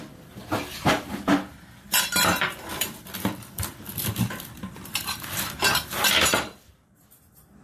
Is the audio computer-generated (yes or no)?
yes